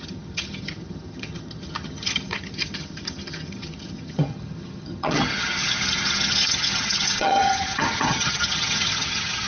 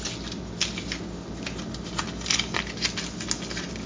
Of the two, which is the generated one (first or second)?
first